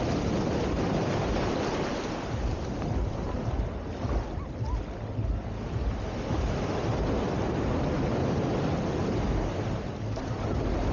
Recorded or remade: recorded